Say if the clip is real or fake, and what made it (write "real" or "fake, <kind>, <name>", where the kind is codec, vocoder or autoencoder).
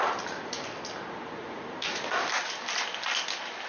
real